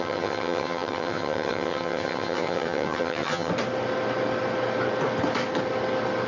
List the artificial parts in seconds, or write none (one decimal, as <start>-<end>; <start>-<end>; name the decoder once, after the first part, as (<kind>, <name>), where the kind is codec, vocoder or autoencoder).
0.0-3.5 (vocoder, HiFi-GAN)